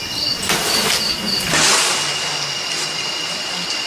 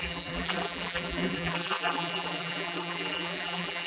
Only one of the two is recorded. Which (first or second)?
first